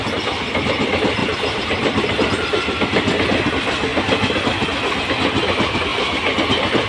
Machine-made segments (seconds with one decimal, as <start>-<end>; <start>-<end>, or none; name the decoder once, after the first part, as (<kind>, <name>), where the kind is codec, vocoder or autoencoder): 1.2-2.3 (vocoder, BigVGAN v2)